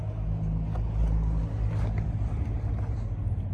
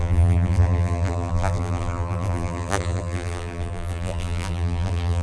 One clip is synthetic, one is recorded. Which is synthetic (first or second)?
second